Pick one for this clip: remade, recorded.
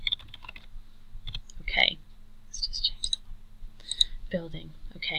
recorded